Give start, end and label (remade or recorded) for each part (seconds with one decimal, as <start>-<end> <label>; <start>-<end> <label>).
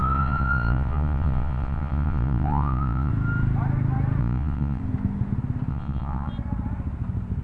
0.0-3.1 remade; 3.1-4.2 recorded; 4.2-4.8 remade; 4.8-5.7 recorded; 5.7-6.3 remade; 6.3-7.4 recorded